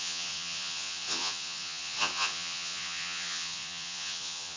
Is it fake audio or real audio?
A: fake